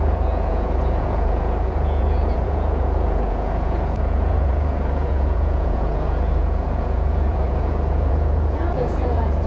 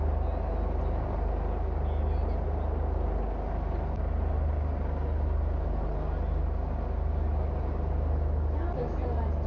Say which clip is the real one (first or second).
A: second